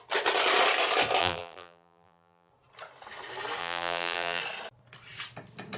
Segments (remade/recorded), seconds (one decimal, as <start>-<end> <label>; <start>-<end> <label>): 0.0-1.2 recorded; 1.2-2.5 remade; 2.5-3.6 recorded; 3.6-4.4 remade; 4.4-5.8 recorded